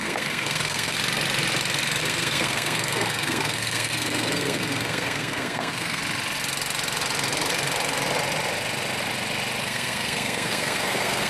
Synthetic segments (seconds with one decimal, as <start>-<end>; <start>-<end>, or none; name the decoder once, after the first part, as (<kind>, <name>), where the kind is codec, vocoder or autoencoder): 0.0-1.0 (codec, SNAC); 2.0-6.0; 9.6-11.3